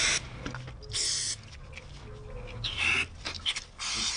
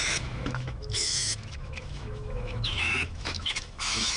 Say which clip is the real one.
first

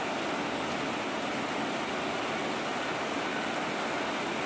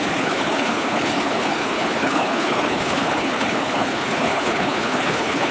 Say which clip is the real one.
first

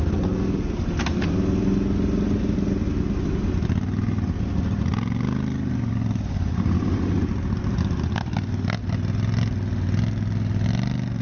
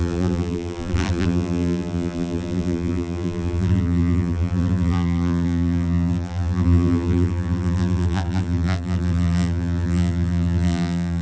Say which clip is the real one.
first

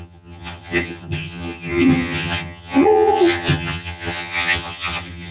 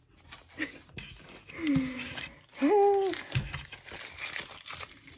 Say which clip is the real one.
second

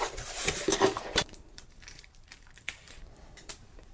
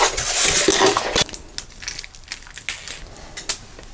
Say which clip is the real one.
second